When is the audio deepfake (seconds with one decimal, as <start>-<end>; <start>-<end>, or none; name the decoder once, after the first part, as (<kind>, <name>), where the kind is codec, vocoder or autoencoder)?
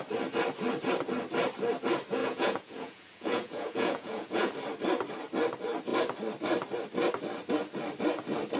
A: 2.2-4.5 (vocoder, Vocos)